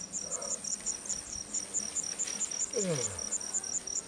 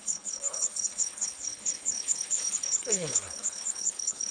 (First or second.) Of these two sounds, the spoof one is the second